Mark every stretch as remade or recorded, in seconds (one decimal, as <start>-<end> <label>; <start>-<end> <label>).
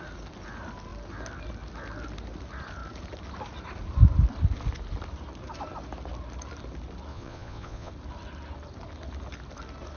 0.0-7.1 recorded; 7.1-7.9 remade; 7.9-10.0 recorded